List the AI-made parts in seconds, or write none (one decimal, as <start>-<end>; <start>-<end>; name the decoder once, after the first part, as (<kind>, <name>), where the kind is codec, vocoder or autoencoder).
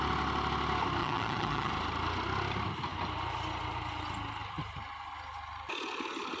1.0-1.7 (vocoder, HiFi-GAN)